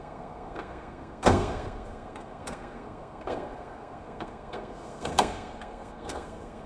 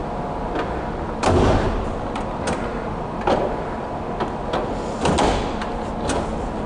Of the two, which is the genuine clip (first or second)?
second